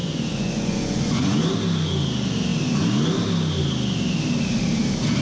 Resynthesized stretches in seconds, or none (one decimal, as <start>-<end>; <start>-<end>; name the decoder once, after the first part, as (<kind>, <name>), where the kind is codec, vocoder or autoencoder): 0.0-1.4 (vocoder, Vocos)